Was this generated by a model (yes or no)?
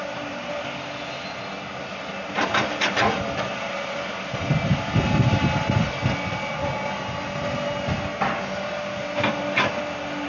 no